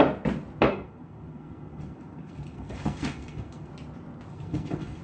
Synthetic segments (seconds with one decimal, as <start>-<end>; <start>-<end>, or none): 0.7-3.7; 4.3-5.0